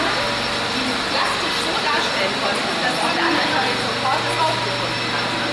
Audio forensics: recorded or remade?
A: recorded